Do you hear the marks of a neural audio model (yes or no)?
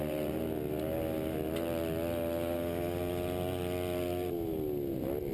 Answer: no